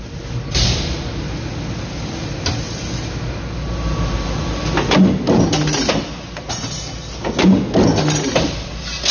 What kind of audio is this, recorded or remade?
recorded